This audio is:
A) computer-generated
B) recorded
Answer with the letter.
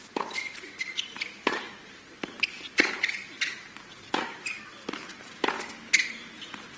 B